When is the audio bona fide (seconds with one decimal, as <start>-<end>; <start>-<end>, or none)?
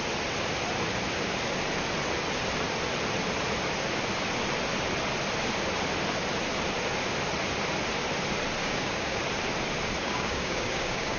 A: 0.0-8.6; 9.2-10.0